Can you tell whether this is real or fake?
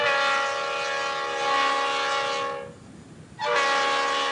real